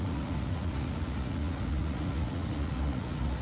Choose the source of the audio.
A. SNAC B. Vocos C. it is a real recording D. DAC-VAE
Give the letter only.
B